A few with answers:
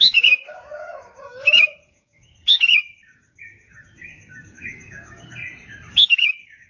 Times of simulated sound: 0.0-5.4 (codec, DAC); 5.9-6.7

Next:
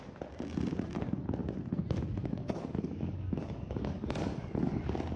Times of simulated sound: 2.2-4.8 (codec, DAC)

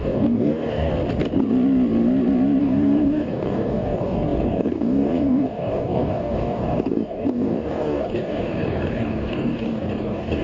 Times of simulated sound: 0.0-0.9 (codec, DAC); 2.6-10.4

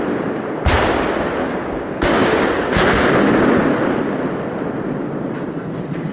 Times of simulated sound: 1.4-2.7 (codec, DAC)

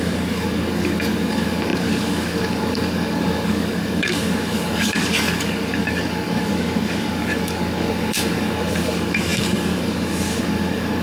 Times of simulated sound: 0.0-11.0 (codec, DAC)

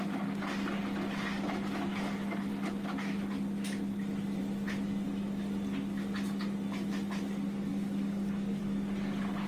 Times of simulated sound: 7.7-8.6 (codec, DAC)

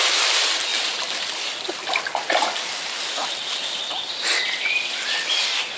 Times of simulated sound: none

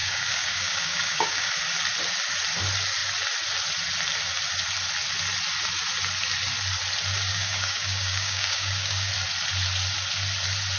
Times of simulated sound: 0.0-1.5 (codec, DAC); 7.3-9.1